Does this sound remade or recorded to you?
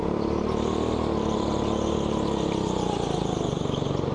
recorded